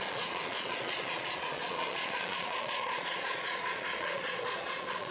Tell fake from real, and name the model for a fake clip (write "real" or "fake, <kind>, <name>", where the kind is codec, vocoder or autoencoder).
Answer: fake, vocoder, Vocos